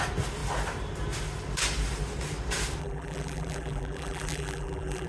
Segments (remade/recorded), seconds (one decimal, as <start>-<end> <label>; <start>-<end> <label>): 0.0-2.8 recorded; 2.8-5.1 remade